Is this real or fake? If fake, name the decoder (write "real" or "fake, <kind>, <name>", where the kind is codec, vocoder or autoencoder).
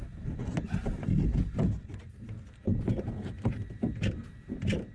real